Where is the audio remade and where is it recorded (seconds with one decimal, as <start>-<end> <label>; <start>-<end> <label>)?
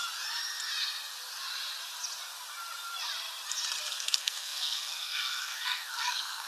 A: 0.0-3.9 recorded; 3.9-6.5 remade